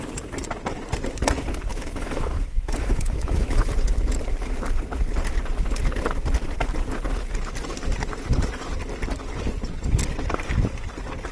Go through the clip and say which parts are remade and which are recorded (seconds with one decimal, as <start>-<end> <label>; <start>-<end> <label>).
0.0-1.7 recorded; 1.7-3.7 remade; 3.7-11.3 recorded